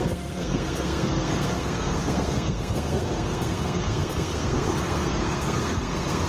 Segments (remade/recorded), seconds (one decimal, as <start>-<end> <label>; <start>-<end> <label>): 0.0-6.3 remade